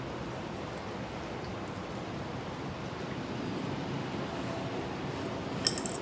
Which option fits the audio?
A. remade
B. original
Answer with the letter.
B